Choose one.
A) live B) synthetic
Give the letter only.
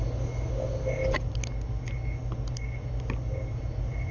A